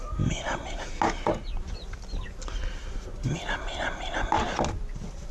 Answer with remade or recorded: recorded